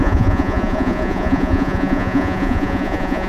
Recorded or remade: remade